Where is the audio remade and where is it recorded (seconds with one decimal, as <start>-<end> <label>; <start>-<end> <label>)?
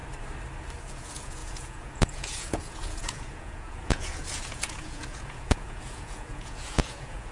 0.0-0.8 recorded; 0.8-7.3 remade